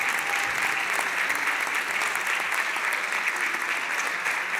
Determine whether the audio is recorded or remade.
recorded